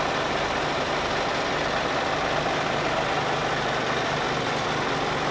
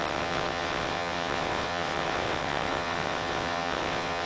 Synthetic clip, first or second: second